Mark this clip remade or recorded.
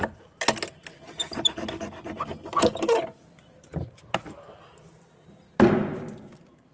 recorded